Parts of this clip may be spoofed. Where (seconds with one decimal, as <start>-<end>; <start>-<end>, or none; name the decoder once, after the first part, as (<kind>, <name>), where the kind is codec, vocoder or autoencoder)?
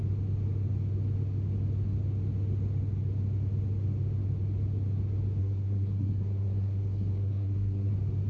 5.4-7.9 (codec, SNAC)